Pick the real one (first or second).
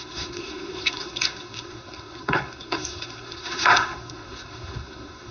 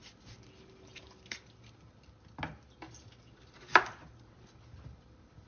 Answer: second